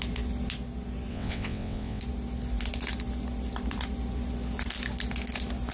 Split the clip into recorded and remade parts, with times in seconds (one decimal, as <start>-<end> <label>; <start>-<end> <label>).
0.0-1.1 recorded; 1.1-2.0 remade; 2.0-5.7 recorded